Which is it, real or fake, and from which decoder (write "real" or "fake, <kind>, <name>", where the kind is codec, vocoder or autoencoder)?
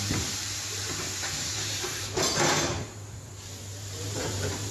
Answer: fake, vocoder, BigVGAN v2